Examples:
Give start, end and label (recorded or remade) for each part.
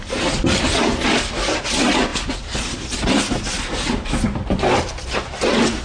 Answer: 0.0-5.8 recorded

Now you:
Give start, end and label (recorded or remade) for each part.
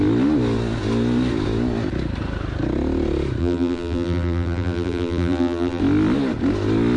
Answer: 0.0-3.4 recorded; 3.4-5.8 remade; 5.8-7.0 recorded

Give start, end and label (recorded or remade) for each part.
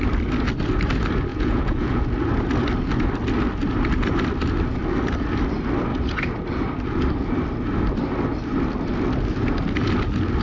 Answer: 0.0-1.3 recorded; 1.3-2.0 remade; 2.0-10.4 recorded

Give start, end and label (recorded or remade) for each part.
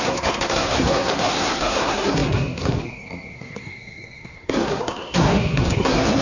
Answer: 0.0-6.2 remade